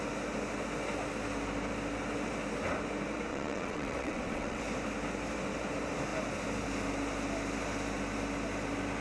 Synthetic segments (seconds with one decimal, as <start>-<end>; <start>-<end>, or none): 3.3-4.6